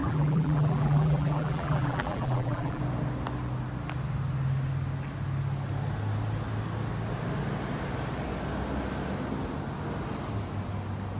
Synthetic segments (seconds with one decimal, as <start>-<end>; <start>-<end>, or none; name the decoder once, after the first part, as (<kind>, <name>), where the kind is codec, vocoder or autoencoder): 0.0-2.8 (vocoder, BigVGAN v2)

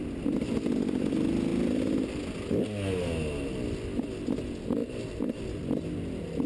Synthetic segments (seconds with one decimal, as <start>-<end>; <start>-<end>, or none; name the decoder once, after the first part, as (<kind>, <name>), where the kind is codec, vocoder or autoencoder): 4.8-5.4 (vocoder, BigVGAN v2)

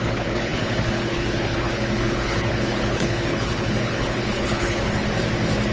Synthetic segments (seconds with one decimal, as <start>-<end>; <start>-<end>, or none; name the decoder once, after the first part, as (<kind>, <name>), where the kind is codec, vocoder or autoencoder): 0.0-5.0 (codec, HILCodec)

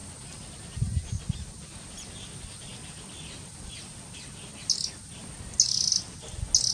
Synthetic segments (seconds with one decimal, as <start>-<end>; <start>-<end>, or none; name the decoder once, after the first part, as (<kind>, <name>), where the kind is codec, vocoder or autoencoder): none

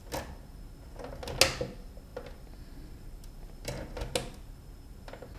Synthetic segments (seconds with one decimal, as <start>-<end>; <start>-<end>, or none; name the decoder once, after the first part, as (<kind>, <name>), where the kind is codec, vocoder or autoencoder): none

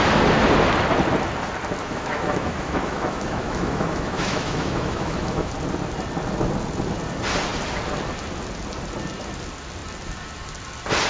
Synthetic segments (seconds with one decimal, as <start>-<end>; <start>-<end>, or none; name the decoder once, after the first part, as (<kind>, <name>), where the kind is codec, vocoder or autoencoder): 1.8-5.5 (autoencoder, DAC-VAE)

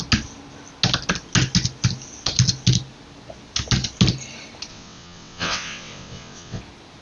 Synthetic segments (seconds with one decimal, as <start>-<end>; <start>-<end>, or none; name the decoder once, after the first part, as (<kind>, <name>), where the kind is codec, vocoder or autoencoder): 4.7-6.6 (vocoder, WaveNeXt)